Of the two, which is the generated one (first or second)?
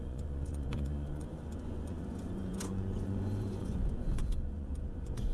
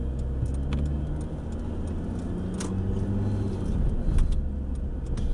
first